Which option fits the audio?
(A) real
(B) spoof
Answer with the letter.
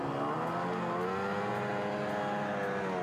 A